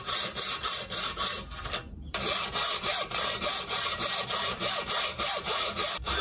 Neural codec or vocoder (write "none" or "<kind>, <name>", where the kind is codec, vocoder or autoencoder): vocoder, BigVGAN v2